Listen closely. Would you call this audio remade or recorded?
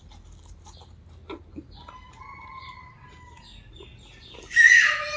recorded